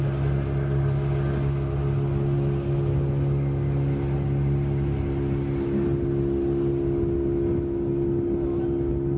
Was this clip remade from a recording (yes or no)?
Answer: no